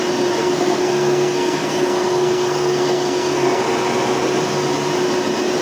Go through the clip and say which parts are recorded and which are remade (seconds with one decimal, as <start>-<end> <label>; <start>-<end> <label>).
0.0-0.4 recorded; 0.4-3.6 remade; 3.6-5.6 recorded